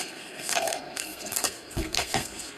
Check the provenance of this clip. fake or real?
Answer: fake